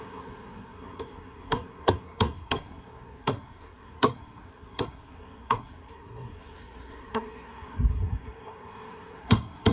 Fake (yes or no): yes